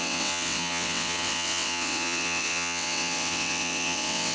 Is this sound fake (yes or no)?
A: yes